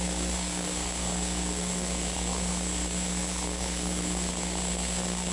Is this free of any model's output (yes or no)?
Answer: no